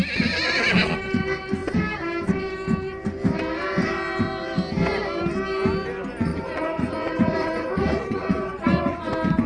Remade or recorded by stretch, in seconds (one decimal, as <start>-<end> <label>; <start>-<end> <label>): 0.0-6.3 recorded; 6.3-9.1 remade; 9.1-9.5 recorded